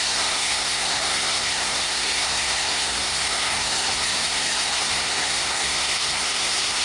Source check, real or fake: fake